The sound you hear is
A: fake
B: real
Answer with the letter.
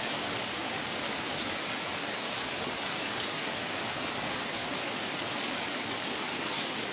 A